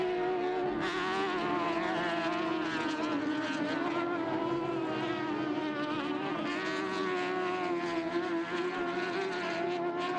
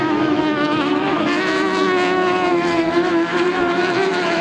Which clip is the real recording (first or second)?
first